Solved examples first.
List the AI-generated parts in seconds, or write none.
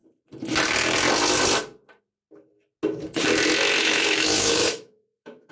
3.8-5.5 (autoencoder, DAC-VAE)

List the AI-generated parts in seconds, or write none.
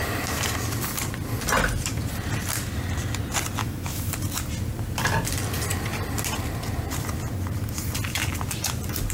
3.6-4.1 (autoencoder, DAC-VAE)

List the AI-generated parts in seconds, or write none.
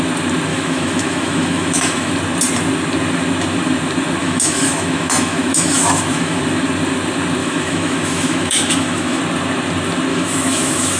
0.5-2.1 (autoencoder, DAC-VAE); 4.2-6.4; 7.4-9.2; 10.1-11.0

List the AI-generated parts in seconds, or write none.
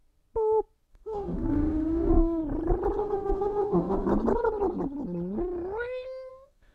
0.9-2.4 (autoencoder, DAC-VAE); 3.0-4.1; 6.3-6.7